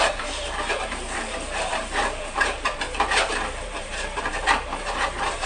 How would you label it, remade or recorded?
remade